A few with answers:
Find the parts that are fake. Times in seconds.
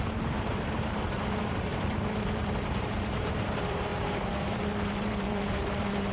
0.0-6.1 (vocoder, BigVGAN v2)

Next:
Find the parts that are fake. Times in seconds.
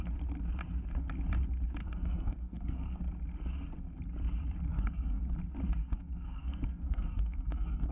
1.8-3.0 (codec, SNAC); 4.7-5.2; 5.8-7.9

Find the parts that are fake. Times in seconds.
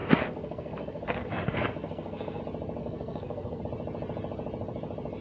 0.0-2.4 (codec, SNAC); 2.8-3.6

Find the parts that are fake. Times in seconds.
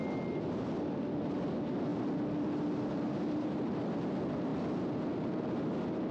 none